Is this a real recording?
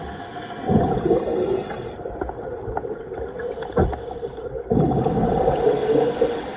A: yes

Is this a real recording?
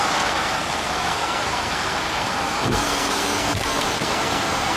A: no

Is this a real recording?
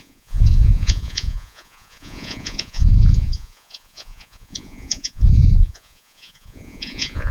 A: no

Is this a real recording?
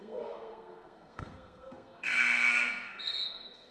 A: no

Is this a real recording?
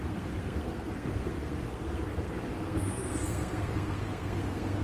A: no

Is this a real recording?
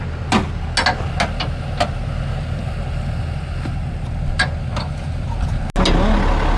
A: yes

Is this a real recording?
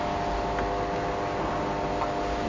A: yes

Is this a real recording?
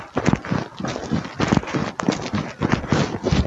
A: yes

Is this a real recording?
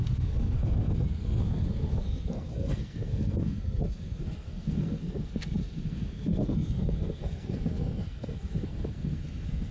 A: no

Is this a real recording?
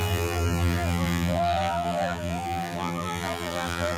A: no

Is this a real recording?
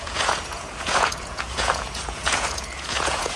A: no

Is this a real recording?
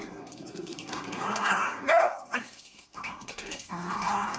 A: no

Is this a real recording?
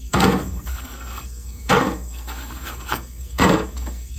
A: no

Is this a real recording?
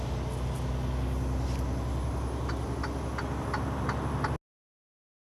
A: yes